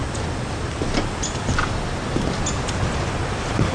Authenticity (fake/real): real